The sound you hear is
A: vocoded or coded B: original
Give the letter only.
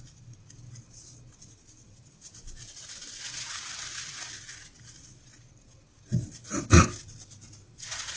B